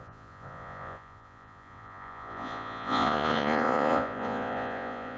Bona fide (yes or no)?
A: no